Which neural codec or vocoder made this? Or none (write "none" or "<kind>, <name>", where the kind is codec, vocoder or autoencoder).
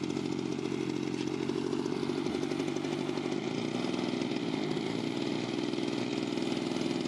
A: none